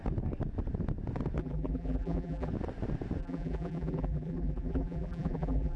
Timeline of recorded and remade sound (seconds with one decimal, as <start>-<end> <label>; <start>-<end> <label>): 0.0-1.4 recorded; 1.4-2.5 remade; 2.5-3.2 recorded; 3.2-5.8 remade